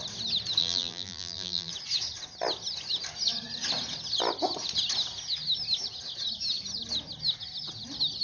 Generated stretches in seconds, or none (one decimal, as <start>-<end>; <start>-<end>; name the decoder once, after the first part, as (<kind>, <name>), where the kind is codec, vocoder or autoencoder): 0.6-1.7 (vocoder, BigVGAN v2)

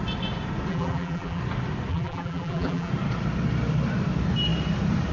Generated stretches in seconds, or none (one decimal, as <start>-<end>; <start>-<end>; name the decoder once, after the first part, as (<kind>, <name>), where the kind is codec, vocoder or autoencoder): 0.7-1.4 (vocoder, BigVGAN v2); 1.9-2.9

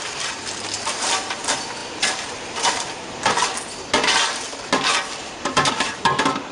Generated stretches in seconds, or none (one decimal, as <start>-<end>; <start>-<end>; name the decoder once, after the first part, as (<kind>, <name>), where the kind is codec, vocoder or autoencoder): 0.0-6.5 (vocoder, BigVGAN v2)

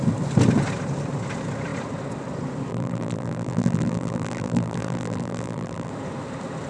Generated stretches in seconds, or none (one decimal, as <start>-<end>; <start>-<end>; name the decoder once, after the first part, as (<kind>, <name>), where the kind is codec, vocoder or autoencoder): 2.7-5.9 (vocoder, BigVGAN v2)

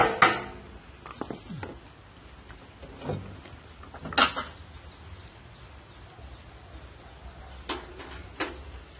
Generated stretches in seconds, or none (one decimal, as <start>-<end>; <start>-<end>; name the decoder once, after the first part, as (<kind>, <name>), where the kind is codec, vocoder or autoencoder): 5.2-6.4 (vocoder, BigVGAN v2); 7.4-9.0

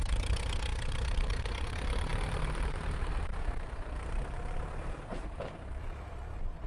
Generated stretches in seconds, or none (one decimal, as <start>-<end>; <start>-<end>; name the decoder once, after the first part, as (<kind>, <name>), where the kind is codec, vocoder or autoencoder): 0.0-0.7 (vocoder, BigVGAN v2); 1.7-6.7